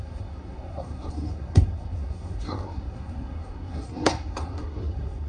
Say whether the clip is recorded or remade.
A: remade